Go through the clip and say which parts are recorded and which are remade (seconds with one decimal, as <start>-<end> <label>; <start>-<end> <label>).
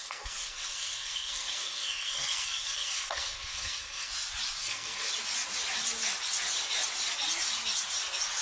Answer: 0.0-4.1 remade; 4.1-4.6 recorded; 4.6-5.1 remade; 5.1-8.4 recorded